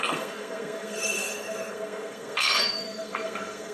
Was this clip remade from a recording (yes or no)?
yes